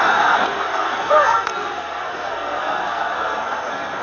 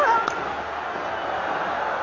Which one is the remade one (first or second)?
first